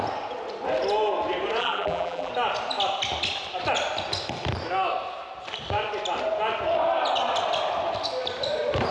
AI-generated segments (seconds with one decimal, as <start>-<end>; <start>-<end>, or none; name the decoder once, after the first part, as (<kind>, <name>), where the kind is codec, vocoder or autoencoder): 1.6-2.3 (vocoder, BigVGAN v2)